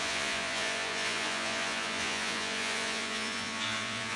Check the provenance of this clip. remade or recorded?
remade